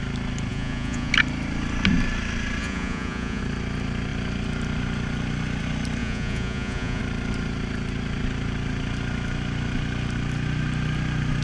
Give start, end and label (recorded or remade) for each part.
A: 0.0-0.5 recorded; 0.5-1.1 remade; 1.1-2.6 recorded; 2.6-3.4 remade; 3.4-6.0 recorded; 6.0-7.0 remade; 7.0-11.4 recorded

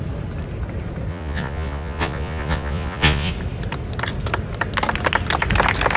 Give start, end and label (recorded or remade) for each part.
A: 0.0-1.1 recorded; 1.1-3.3 remade; 3.3-6.0 recorded